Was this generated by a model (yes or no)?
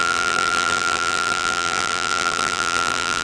yes